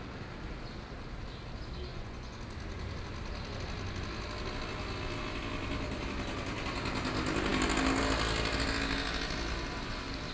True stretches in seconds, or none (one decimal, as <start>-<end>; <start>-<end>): 0.0-1.9; 2.4-10.3